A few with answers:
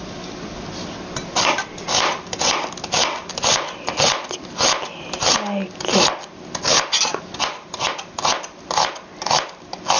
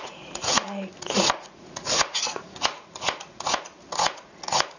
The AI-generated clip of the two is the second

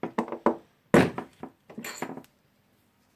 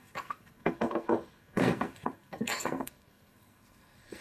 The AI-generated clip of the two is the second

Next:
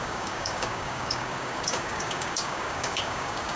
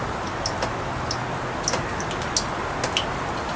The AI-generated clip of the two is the first